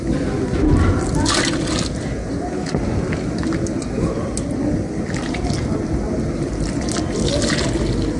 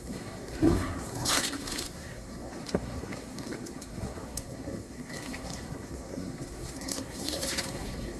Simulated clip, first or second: second